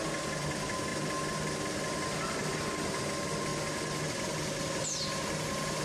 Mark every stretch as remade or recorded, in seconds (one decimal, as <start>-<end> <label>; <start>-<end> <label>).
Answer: 0.0-5.8 recorded